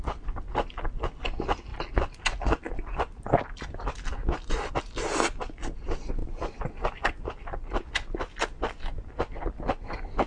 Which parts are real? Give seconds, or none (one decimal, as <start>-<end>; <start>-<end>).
0.0-10.3